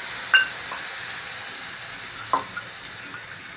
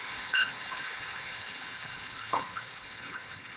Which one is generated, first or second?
second